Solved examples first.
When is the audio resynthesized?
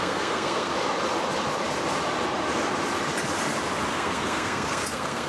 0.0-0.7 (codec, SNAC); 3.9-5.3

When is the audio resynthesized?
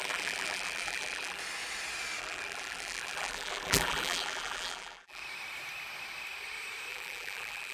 0.0-1.4 (vocoder, BigVGAN v2); 2.2-5.2; 6.9-7.7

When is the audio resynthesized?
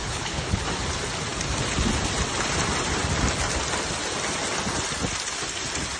0.0-0.6 (codec, HILCodec)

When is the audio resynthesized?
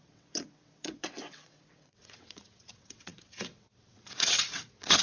0.0-5.0 (vocoder, WaveNeXt)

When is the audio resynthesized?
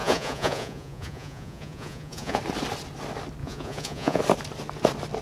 0.0-2.4 (vocoder, Vocos); 3.4-4.2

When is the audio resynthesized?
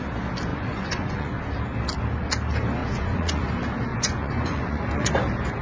0.5-1.4 (vocoder, Vocos); 2.8-3.4; 3.9-5.1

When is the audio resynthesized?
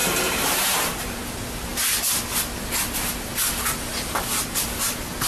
0.0-1.2 (vocoder, BigVGAN v2)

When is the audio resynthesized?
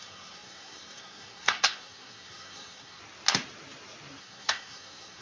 0.0-3.0 (codec, SNAC); 4.2-5.2